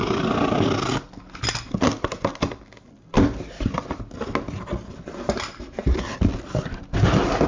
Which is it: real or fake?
real